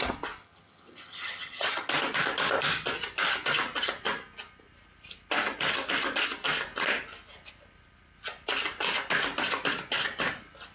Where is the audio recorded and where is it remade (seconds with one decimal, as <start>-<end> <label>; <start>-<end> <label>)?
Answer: 0.0-0.4 recorded; 0.4-1.9 remade; 1.9-10.7 recorded